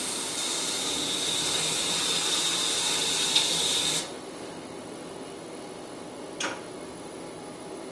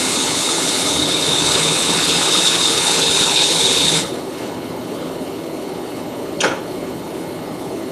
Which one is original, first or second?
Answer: first